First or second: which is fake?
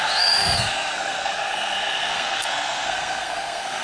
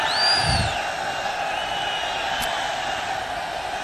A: first